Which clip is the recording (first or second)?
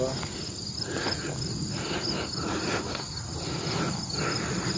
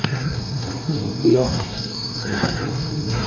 first